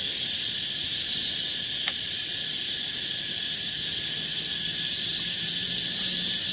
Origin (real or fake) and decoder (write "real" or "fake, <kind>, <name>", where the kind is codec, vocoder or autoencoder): real